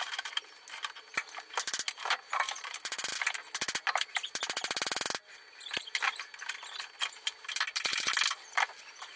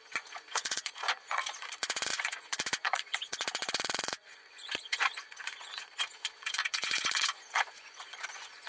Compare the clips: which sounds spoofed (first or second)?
second